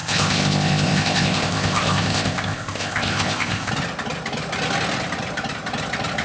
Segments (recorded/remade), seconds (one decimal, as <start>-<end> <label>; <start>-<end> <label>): 0.0-3.7 remade; 3.7-6.2 recorded